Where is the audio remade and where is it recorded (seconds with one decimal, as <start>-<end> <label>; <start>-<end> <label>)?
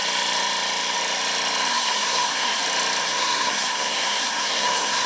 0.0-1.7 recorded; 1.7-2.6 remade; 2.6-3.0 recorded; 3.0-5.1 remade